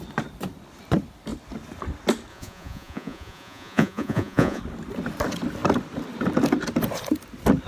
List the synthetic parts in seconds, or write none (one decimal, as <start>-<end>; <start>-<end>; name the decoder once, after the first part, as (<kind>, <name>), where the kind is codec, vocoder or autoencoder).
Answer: 2.3-4.6 (vocoder, Vocos)